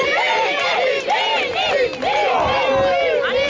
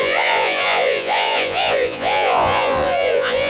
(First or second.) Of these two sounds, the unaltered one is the first